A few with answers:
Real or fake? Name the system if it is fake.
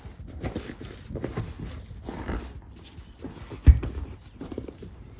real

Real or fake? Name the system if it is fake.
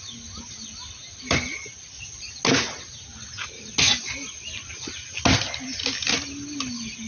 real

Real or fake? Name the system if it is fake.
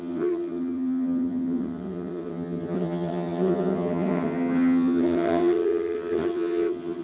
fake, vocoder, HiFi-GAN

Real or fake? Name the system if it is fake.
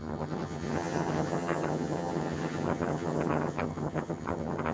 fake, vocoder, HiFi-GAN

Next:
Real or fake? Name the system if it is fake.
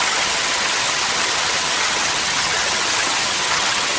fake, vocoder, HiFi-GAN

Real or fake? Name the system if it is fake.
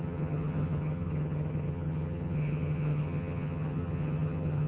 fake, vocoder, HiFi-GAN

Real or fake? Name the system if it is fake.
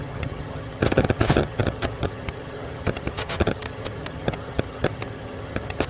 fake, vocoder, HiFi-GAN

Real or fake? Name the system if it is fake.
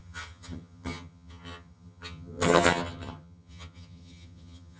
fake, vocoder, HiFi-GAN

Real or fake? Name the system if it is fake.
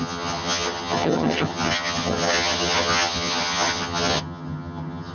fake, vocoder, HiFi-GAN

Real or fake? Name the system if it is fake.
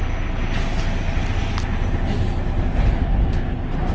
real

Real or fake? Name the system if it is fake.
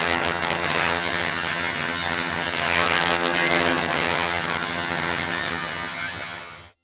fake, vocoder, HiFi-GAN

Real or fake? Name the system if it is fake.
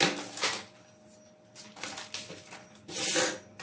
real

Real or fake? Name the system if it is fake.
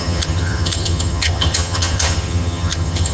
fake, vocoder, HiFi-GAN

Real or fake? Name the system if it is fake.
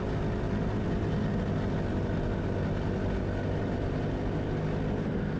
real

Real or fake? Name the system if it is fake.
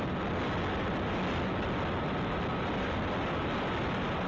real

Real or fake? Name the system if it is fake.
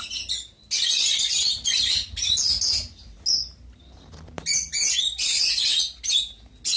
real